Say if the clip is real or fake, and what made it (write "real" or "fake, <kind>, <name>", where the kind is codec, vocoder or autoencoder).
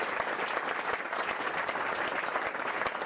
fake, vocoder, BigVGAN v2